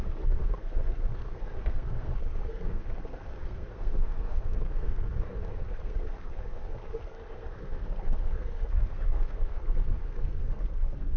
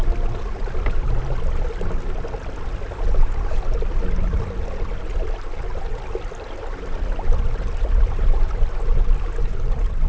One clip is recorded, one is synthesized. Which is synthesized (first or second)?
first